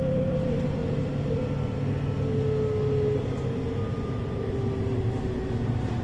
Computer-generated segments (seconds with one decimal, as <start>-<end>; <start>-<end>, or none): 0.0-0.8; 4.4-6.0